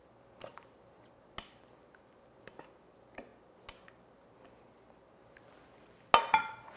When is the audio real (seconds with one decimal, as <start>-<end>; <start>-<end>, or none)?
0.0-6.8